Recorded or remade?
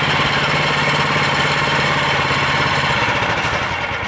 remade